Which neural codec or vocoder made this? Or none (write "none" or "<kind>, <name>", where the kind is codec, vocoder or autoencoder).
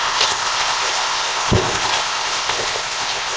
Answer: codec, ZipCodec